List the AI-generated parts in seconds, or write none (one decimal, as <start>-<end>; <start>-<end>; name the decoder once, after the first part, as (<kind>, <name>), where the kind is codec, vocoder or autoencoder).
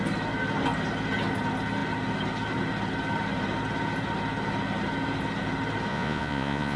5.9-6.8 (vocoder, Vocos)